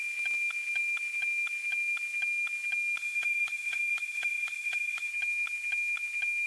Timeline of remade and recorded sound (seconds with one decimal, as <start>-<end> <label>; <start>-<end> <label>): 0.0-3.0 recorded; 3.0-5.1 remade; 5.1-6.5 recorded